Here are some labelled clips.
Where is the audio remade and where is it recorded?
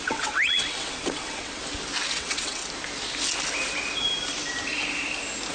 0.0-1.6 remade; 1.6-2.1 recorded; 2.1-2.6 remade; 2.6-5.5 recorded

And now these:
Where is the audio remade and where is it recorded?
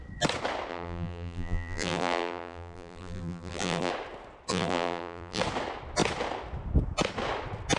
0.0-0.7 recorded; 0.7-3.9 remade; 3.9-4.5 recorded; 4.5-5.4 remade; 5.4-7.8 recorded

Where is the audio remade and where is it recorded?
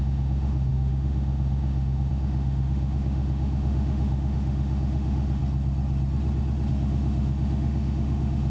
0.0-5.4 remade; 5.4-6.7 recorded; 6.7-8.5 remade